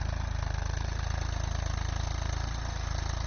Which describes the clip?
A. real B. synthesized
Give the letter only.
A